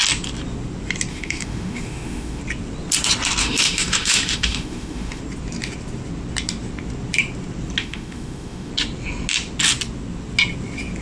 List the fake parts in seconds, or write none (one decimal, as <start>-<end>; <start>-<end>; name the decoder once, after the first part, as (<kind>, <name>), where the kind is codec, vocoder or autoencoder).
1.1-2.4 (autoencoder, DAC-VAE); 3.4-5.2; 7.8-8.7